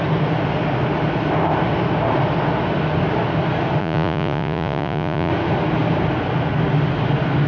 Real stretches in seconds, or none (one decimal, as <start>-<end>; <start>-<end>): 0.0-3.8; 5.3-7.5